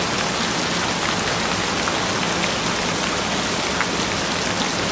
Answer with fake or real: real